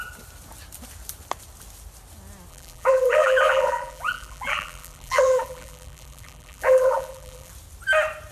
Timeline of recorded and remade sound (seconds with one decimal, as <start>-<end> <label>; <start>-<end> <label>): 0.0-2.5 recorded; 2.5-7.5 remade; 7.5-8.3 recorded